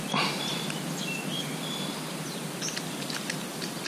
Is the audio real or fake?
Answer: real